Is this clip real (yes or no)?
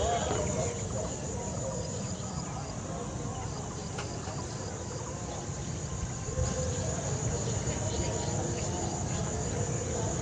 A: no